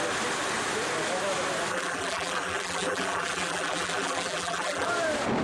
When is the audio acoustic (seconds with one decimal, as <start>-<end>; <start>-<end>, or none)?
0.0-1.7; 4.9-5.4